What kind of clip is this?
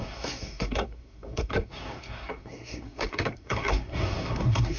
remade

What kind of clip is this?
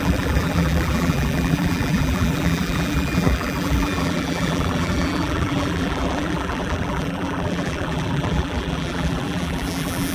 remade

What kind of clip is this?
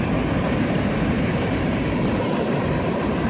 remade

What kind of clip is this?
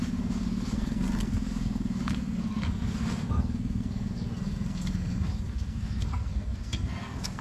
remade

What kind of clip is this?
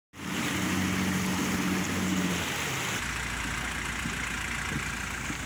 recorded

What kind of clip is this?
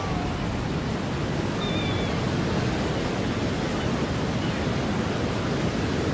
recorded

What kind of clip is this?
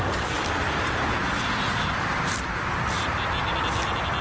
recorded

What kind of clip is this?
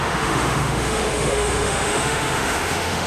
remade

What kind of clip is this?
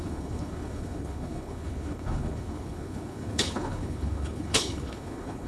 remade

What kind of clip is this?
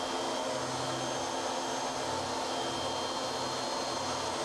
recorded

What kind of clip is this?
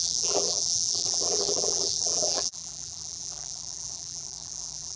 remade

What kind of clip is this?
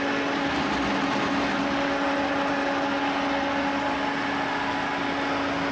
recorded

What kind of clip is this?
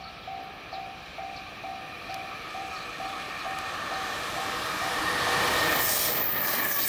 remade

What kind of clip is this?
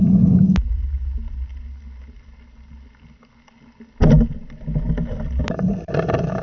recorded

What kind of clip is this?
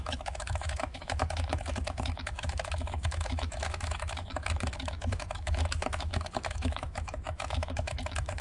remade